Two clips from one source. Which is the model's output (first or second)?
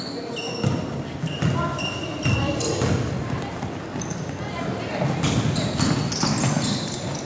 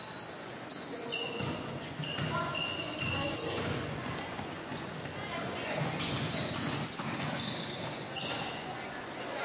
second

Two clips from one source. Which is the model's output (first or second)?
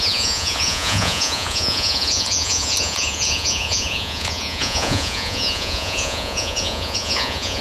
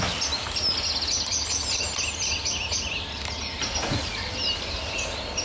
first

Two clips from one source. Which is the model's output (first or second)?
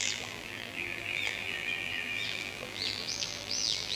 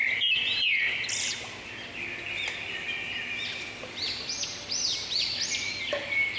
first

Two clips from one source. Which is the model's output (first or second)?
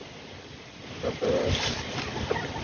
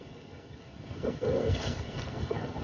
second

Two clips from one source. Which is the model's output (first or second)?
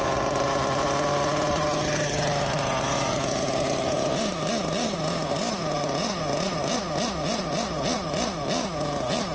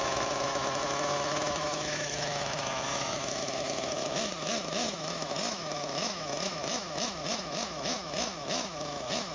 second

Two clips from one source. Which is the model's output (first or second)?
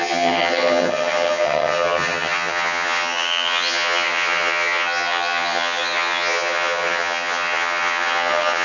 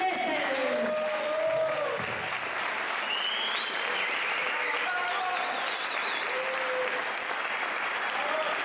first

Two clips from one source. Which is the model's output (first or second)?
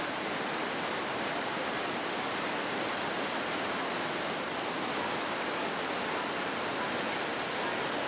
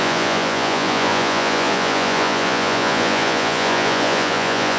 second